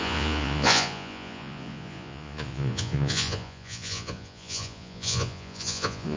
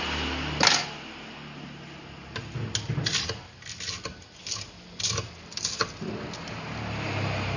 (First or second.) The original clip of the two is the second